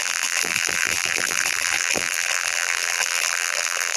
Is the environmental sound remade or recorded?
remade